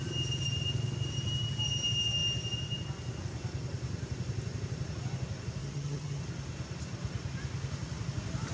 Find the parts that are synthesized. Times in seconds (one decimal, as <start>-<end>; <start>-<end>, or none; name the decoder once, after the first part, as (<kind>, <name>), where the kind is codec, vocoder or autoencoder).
5.6-6.2 (vocoder, HiFi-GAN)